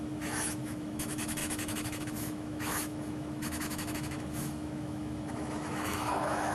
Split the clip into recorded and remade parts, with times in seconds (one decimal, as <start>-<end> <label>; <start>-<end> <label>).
0.0-6.5 remade

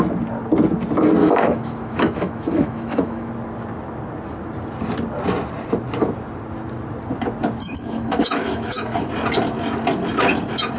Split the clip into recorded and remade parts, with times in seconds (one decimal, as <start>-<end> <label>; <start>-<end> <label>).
0.0-1.2 recorded; 1.2-3.3 remade; 3.3-7.6 recorded; 7.6-9.1 remade; 9.1-10.8 recorded

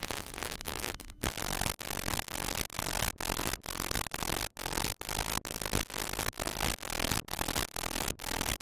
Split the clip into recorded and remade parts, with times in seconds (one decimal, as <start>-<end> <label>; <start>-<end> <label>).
0.0-1.3 remade; 1.3-8.6 recorded

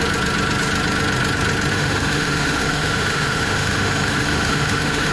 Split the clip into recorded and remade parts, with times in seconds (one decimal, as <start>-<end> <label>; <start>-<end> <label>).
0.0-1.7 recorded; 1.7-5.1 remade

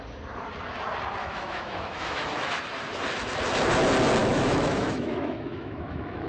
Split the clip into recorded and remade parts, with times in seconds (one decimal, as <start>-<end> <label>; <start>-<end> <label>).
0.0-1.2 recorded; 1.2-2.6 remade; 2.6-4.2 recorded; 4.2-6.3 remade

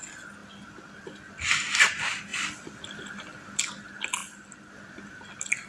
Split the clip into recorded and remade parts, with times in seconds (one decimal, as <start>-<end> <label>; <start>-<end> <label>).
0.0-5.7 recorded